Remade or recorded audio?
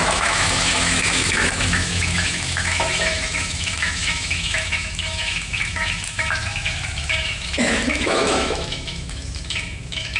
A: remade